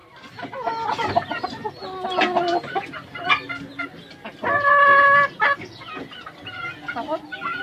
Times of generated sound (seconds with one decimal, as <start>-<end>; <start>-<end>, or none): none